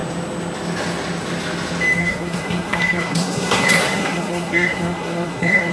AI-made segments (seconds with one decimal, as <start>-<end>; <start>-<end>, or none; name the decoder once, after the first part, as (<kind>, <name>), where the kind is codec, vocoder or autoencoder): 2.0-5.7 (codec, SNAC)